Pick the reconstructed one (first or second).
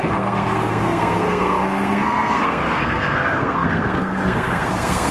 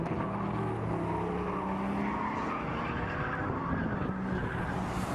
first